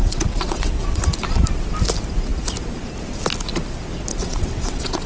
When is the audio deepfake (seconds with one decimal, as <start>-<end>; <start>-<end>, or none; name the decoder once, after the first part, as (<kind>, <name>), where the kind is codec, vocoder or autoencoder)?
0.0-1.0 (vocoder, WaveNeXt); 4.1-5.1